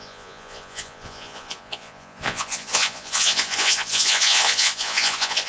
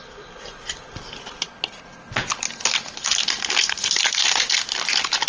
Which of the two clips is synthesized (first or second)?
first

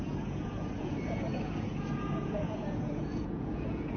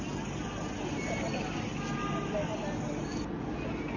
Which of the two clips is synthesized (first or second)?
first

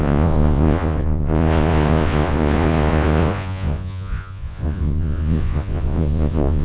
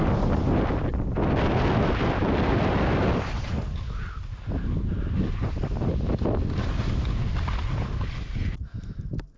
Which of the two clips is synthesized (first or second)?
first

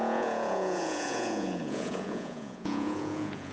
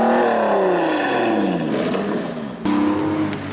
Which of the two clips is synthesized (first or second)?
first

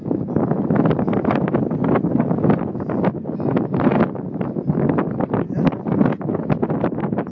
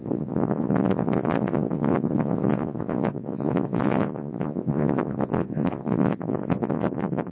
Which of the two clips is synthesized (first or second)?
second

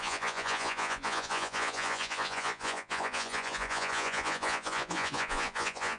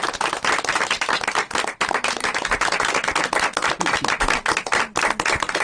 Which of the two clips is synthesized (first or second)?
first